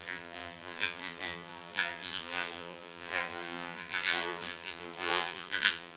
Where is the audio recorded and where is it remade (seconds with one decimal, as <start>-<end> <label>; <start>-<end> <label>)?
0.0-6.0 remade